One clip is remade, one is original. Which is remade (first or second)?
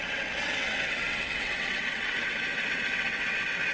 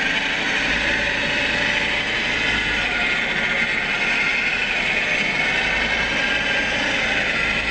first